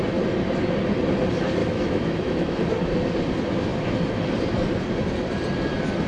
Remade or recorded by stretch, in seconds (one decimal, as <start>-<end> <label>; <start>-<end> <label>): 0.0-1.6 recorded; 1.6-2.6 remade; 2.6-6.1 recorded